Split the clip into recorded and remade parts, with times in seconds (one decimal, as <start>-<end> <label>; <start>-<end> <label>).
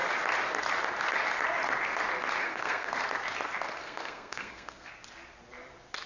0.0-2.4 recorded; 2.4-2.9 remade; 2.9-3.8 recorded; 3.8-4.9 remade; 4.9-6.1 recorded